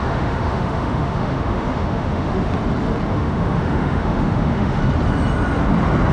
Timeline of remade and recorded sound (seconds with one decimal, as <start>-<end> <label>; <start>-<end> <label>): 0.0-2.3 remade; 2.3-3.1 recorded; 3.1-4.8 remade; 4.8-6.1 recorded